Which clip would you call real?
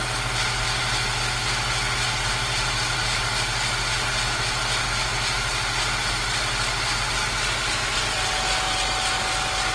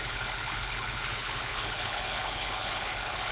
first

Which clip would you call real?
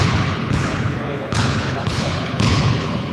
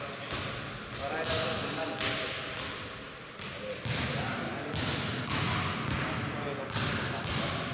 second